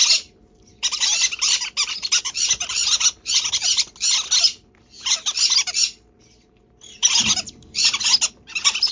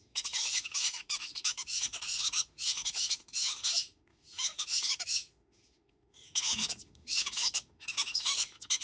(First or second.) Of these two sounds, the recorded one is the first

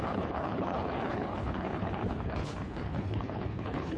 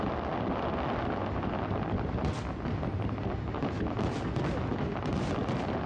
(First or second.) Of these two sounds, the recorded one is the second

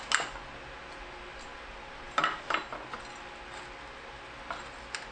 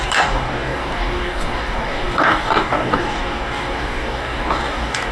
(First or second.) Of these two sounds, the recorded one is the first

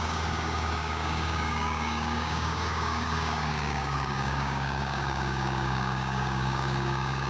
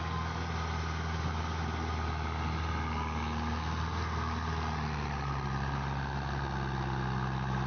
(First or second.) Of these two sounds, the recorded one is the second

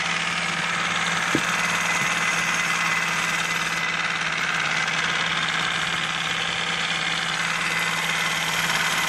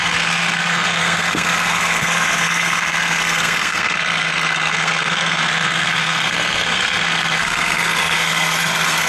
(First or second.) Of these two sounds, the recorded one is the first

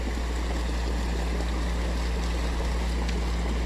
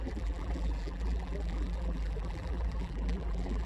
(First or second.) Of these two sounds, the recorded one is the first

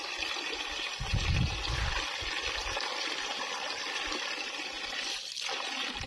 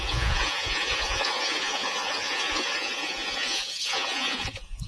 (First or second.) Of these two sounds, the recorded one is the first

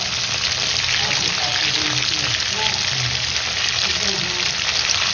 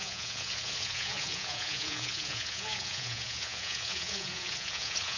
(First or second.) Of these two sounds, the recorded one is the first